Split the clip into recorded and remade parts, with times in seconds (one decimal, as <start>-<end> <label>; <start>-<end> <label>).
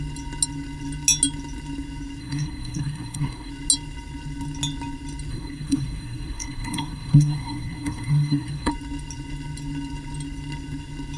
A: 0.0-2.2 recorded; 2.2-3.5 remade; 3.5-5.3 recorded; 5.3-8.7 remade; 8.7-11.2 recorded